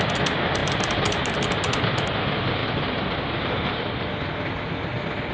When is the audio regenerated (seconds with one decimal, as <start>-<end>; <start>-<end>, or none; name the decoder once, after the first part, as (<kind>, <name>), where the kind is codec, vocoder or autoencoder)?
none